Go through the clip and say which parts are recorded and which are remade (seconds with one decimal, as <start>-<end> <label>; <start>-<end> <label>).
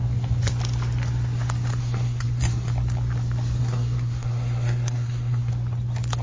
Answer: 0.0-1.8 recorded; 1.8-2.7 remade; 2.7-3.6 recorded; 3.6-5.5 remade; 5.5-6.2 recorded